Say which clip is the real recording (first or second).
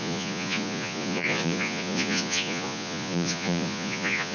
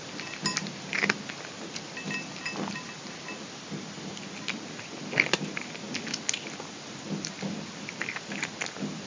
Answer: second